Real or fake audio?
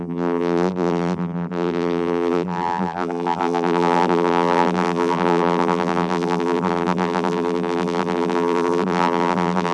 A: fake